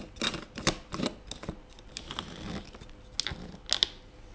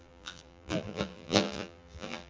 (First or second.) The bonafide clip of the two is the first